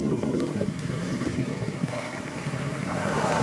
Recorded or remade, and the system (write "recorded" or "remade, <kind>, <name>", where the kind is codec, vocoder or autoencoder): remade, codec, SNAC